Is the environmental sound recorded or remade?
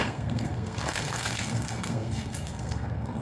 remade